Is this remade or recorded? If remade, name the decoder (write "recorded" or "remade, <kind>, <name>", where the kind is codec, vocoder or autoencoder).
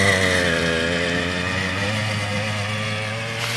remade, vocoder, BigVGAN v2